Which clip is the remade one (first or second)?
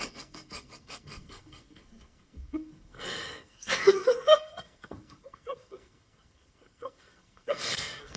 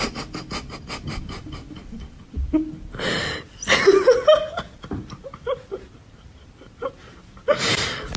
first